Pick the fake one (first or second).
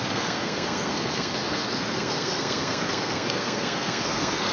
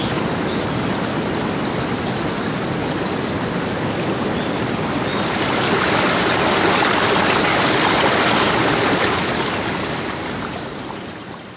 first